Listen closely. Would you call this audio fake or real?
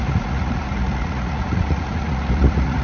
fake